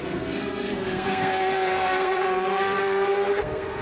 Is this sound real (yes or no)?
no